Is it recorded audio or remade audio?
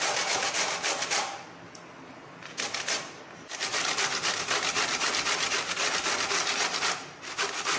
recorded